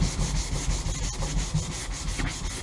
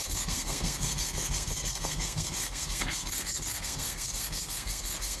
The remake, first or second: second